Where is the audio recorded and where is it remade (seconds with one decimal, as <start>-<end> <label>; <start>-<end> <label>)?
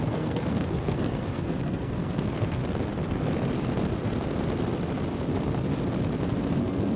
0.0-2.6 remade; 2.6-6.6 recorded; 6.6-7.0 remade